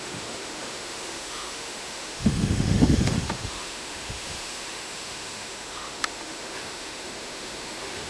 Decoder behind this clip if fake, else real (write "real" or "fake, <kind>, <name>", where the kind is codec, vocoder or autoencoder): fake, autoencoder, DAC-VAE